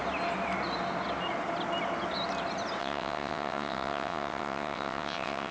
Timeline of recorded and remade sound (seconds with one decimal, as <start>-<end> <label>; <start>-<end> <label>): 0.0-2.8 recorded; 2.8-5.5 remade